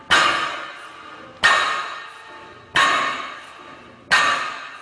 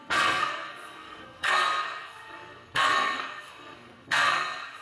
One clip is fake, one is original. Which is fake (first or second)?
second